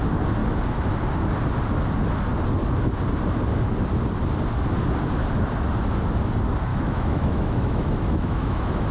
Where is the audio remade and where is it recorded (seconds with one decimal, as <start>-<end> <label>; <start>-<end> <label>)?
0.0-0.4 recorded; 0.4-0.9 remade; 0.9-6.7 recorded; 6.7-8.9 remade